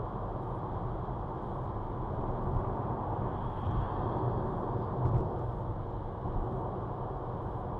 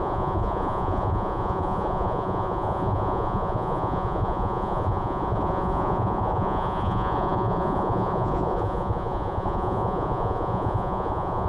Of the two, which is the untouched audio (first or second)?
first